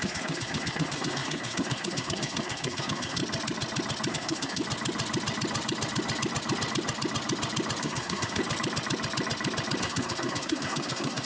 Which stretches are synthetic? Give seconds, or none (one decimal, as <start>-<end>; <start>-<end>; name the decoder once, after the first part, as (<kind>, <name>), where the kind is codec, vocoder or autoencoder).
0.0-3.2 (codec, SNAC); 4.1-4.6; 7.8-8.4; 9.8-11.3